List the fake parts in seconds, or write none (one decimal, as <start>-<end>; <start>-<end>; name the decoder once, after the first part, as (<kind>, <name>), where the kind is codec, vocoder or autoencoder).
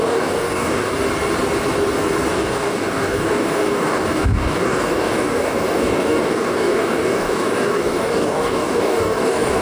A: 0.0-0.9 (codec, DAC); 2.3-9.6